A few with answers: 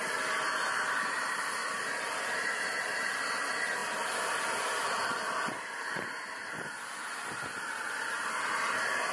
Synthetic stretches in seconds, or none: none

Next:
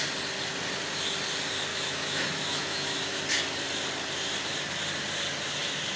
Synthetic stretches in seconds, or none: 1.7-3.2 (autoencoder, DAC-VAE)

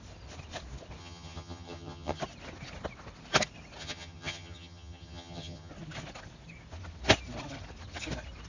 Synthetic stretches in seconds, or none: 1.0-2.2 (vocoder, HiFi-GAN); 3.8-5.7